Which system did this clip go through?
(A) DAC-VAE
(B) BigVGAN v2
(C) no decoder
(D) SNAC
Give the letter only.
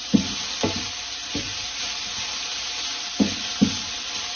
C